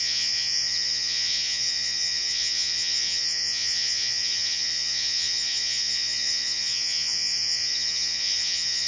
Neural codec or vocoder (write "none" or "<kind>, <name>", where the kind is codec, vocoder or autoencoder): vocoder, Vocos